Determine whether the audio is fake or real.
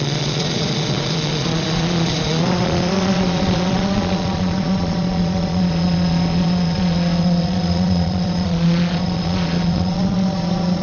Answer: fake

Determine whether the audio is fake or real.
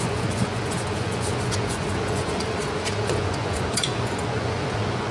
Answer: fake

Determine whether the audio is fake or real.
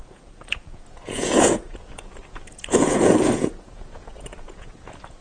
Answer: fake